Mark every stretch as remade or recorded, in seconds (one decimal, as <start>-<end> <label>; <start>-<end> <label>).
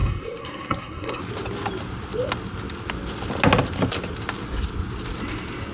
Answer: 0.0-1.2 remade; 1.2-5.7 recorded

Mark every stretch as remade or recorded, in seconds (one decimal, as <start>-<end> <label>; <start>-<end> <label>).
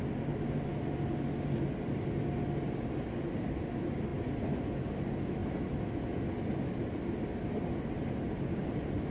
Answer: 0.0-9.1 recorded